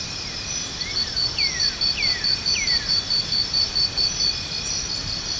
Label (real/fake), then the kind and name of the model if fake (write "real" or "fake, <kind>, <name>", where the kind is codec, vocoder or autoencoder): real